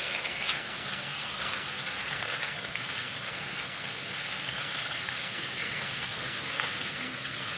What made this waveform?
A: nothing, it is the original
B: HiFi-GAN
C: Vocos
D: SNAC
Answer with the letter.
D